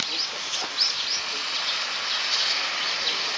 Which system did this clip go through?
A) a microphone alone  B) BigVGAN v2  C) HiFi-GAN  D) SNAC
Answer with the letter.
A